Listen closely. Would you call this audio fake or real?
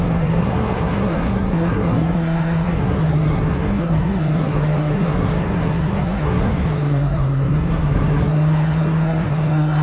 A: fake